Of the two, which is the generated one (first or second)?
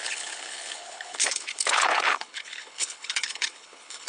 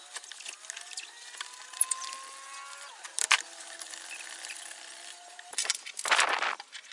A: first